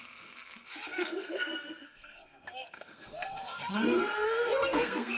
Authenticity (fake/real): fake